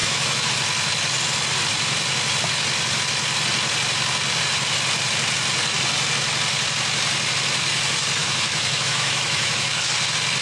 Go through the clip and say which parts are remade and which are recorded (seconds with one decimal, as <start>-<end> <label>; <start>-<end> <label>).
0.0-0.5 remade; 0.5-8.2 recorded; 8.2-9.9 remade; 9.9-10.4 recorded